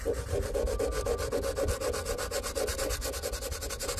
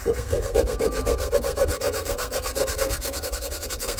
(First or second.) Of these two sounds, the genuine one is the first